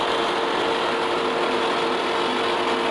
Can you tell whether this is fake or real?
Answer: real